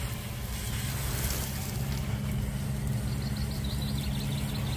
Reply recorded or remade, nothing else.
recorded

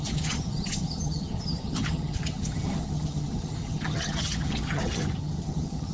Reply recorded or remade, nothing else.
remade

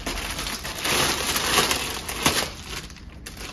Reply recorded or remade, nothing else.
recorded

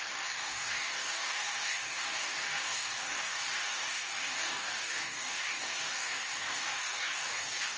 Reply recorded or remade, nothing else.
remade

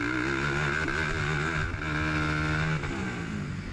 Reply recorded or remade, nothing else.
recorded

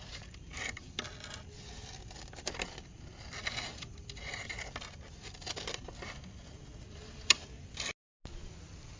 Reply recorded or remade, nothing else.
recorded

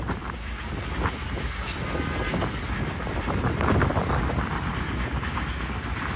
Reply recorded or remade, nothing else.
recorded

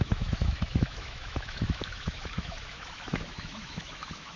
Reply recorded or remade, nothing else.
remade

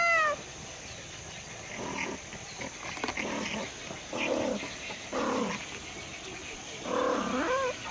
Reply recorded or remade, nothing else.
recorded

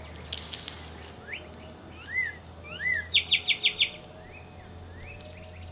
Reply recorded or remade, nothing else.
recorded